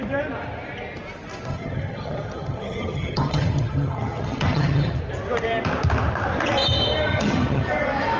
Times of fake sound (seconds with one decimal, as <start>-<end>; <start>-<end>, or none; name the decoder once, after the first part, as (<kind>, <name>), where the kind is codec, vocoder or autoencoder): 1.5-5.0 (vocoder, HiFi-GAN); 7.1-7.7